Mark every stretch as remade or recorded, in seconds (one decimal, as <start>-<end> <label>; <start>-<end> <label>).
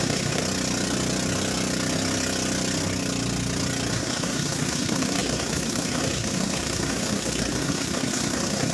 0.0-0.4 remade; 0.4-3.9 recorded; 3.9-8.7 remade